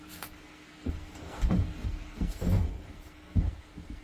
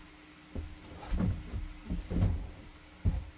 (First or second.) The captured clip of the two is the second